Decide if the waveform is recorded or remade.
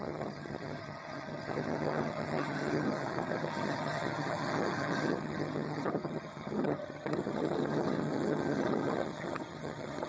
remade